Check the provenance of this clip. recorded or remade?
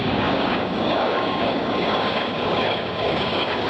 remade